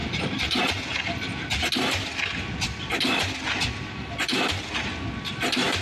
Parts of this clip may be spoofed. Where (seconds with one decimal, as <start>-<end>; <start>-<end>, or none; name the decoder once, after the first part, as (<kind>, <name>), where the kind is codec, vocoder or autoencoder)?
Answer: 0.0-0.6 (vocoder, BigVGAN v2)